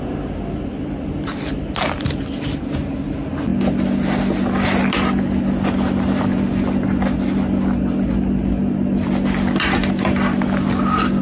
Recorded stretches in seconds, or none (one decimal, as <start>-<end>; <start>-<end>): 0.0-11.2